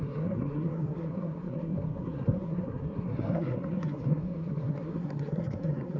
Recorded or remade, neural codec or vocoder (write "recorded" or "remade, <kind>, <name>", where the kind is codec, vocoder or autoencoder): remade, codec, SNAC